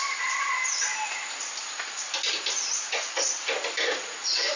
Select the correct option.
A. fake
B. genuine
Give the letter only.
B